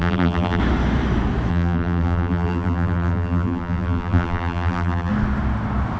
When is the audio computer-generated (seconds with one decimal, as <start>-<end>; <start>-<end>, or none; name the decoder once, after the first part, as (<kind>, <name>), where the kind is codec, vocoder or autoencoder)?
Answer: 0.0-0.6 (vocoder, BigVGAN v2); 1.5-5.1

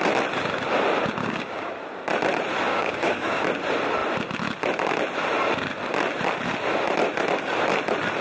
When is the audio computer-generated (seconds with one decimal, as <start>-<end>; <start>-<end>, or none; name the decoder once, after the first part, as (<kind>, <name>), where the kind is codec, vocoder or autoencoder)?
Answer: 1.2-1.7 (codec, DAC); 2.7-3.4

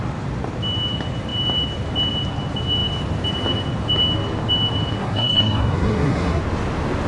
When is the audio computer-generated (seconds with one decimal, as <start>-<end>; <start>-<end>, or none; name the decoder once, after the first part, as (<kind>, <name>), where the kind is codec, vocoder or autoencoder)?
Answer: 5.0-6.4 (codec, SNAC)

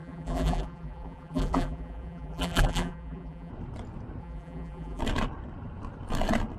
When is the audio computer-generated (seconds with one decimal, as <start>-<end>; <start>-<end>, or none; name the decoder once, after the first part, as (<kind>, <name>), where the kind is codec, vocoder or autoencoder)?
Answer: 0.0-3.5 (vocoder, BigVGAN v2); 4.2-5.0

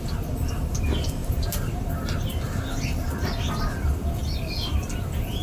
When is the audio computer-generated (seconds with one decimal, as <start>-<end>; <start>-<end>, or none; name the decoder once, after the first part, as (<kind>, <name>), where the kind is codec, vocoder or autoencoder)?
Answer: 1.2-3.1 (vocoder, BigVGAN v2)